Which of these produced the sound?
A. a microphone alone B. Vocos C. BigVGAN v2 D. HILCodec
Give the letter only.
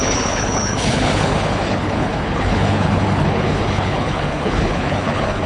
D